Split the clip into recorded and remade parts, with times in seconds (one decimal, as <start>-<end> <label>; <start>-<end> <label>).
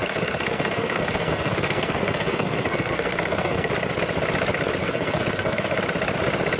0.0-3.7 remade; 3.7-4.8 recorded; 4.8-5.8 remade; 5.8-6.6 recorded